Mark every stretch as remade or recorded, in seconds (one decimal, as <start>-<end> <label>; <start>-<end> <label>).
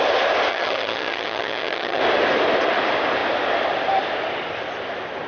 0.0-0.5 recorded; 0.5-2.0 remade; 2.0-5.3 recorded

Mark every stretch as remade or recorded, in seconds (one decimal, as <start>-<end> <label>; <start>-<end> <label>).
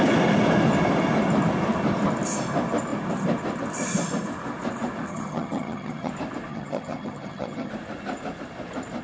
0.0-5.1 recorded; 5.1-6.1 remade; 6.1-6.5 recorded; 6.5-7.7 remade; 7.7-9.0 recorded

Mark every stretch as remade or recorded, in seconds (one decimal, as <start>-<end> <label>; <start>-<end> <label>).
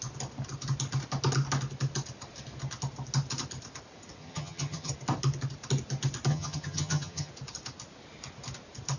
0.0-4.2 recorded; 4.2-4.9 remade; 4.9-6.3 recorded; 6.3-7.3 remade; 7.3-9.0 recorded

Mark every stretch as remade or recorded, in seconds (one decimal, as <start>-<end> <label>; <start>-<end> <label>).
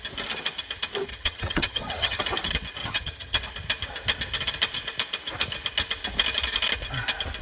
0.0-1.1 recorded; 1.1-2.2 remade; 2.2-2.8 recorded; 2.8-3.4 remade; 3.4-7.4 recorded